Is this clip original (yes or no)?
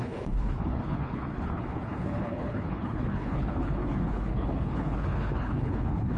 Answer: no